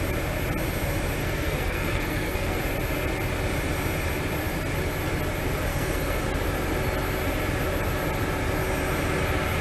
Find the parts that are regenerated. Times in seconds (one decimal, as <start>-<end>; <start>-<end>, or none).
1.2-2.6; 5.7-6.2